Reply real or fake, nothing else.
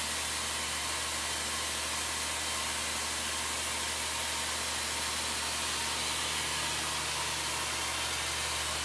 real